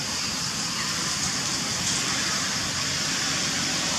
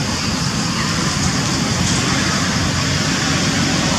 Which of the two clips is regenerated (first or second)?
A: first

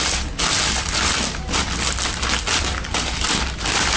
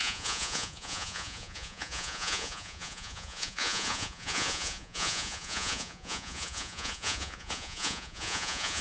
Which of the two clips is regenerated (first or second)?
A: second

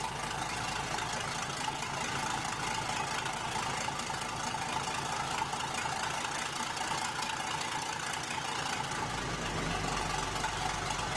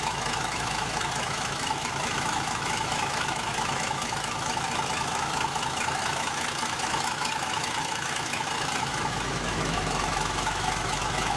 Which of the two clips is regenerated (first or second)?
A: second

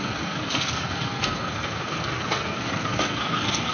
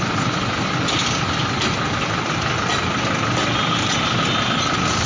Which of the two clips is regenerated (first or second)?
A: first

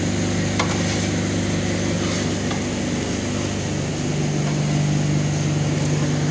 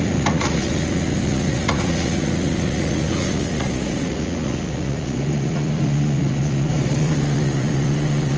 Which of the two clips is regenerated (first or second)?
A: second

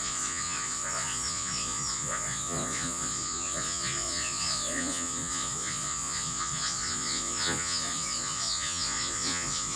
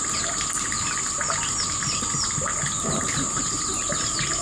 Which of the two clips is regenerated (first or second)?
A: first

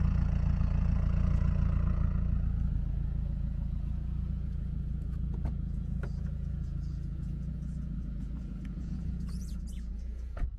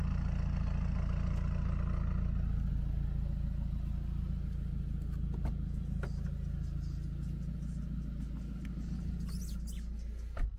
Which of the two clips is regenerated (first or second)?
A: first